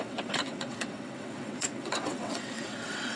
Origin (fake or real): fake